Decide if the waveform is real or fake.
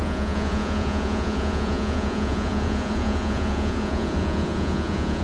fake